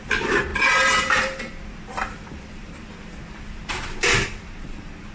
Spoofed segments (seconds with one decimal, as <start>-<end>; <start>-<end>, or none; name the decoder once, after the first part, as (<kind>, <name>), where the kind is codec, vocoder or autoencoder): 0.0-5.1 (vocoder, BigVGAN v2)